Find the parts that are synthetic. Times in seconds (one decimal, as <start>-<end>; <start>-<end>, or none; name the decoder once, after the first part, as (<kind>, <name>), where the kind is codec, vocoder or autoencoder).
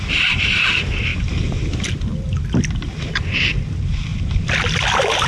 0.0-5.3 (vocoder, BigVGAN v2)